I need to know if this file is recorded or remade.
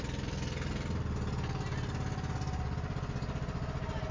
recorded